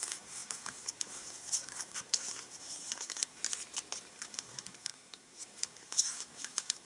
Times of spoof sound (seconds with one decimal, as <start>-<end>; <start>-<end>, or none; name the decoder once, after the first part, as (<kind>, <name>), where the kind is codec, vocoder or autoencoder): 0.0-3.4 (codec, SNAC); 4.1-6.8